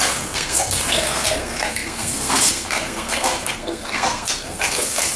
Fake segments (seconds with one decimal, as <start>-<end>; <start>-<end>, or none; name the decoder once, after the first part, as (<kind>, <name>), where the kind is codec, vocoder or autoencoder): 0.0-5.2 (codec, SNAC)